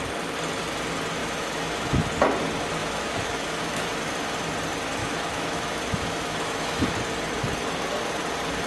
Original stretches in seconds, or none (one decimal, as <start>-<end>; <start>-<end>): 0.0-1.2; 2.1-2.8; 4.1-5.0; 6.9-8.7